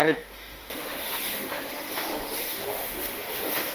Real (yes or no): no